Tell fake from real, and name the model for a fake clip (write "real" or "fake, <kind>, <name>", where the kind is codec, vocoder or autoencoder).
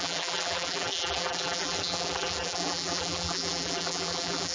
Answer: fake, vocoder, BigVGAN v2